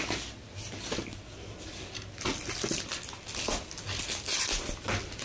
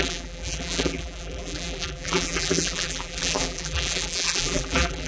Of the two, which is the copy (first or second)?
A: second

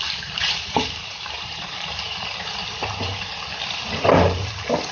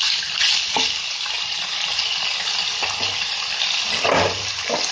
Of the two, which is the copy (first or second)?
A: first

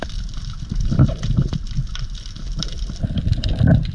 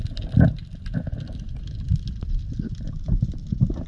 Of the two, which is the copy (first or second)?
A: first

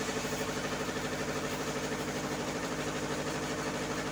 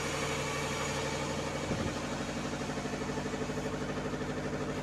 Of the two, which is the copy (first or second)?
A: first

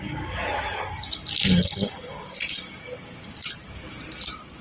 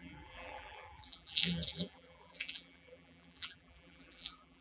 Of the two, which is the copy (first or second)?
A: second